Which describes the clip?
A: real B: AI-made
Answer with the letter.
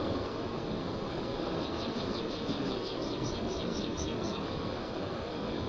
B